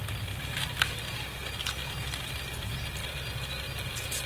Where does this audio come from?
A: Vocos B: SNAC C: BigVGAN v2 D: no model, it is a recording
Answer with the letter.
D